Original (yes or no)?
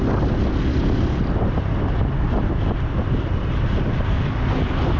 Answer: yes